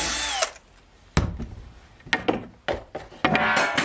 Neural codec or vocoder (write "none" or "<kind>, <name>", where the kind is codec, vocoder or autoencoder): none